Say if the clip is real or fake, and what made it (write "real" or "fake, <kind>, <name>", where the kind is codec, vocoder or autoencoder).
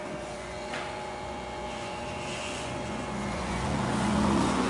fake, vocoder, Vocos